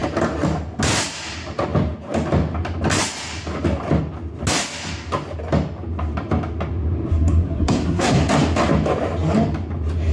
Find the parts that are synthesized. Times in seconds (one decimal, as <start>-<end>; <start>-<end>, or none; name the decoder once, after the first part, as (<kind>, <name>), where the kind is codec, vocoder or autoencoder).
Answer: 7.1-8.2 (codec, SNAC)